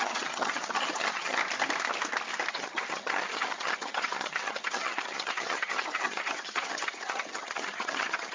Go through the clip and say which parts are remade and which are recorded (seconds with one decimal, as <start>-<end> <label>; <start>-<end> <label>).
0.0-1.4 remade; 1.4-2.5 recorded; 2.5-8.3 remade